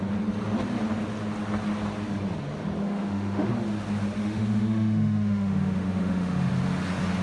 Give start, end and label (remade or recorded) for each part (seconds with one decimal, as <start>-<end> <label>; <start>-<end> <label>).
0.0-2.8 recorded; 2.8-3.5 remade; 3.5-4.2 recorded; 4.2-6.5 remade; 6.5-7.2 recorded